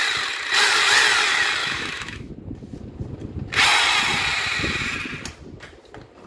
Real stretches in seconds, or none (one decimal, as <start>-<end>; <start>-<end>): 0.0-1.6; 2.3-6.3